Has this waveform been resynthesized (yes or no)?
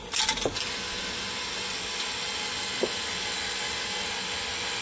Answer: no